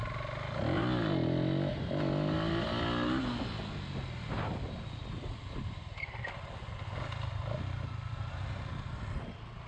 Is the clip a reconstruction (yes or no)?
no